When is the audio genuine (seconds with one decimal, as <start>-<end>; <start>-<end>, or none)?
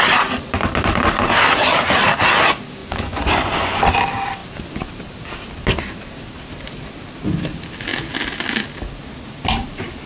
0.0-2.8; 3.8-10.1